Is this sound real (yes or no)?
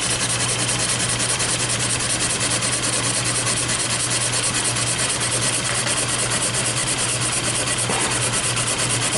yes